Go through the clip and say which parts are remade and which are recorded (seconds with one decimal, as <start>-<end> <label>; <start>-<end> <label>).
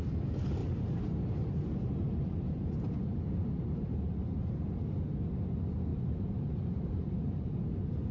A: 0.0-0.6 recorded; 0.6-4.8 remade; 4.8-5.9 recorded; 5.9-7.5 remade; 7.5-8.1 recorded